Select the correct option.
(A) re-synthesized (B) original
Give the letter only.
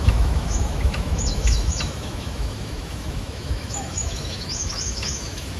A